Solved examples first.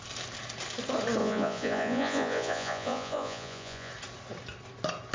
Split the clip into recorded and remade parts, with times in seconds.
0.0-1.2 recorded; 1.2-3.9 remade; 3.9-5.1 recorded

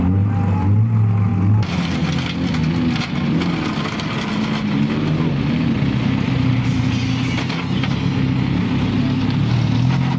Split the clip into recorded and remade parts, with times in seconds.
0.0-10.2 recorded

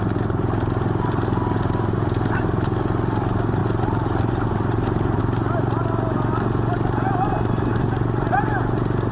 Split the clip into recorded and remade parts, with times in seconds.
0.0-3.6 recorded; 3.6-5.2 remade; 5.2-9.1 recorded